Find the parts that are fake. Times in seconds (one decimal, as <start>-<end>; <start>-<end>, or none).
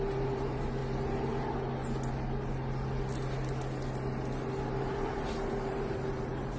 0.0-0.8; 4.8-6.6